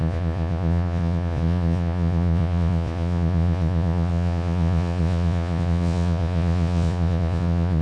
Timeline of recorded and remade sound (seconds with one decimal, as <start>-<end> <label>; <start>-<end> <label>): 0.0-7.8 remade